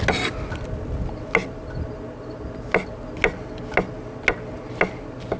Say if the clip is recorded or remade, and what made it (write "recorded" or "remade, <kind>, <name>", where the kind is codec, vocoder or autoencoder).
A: recorded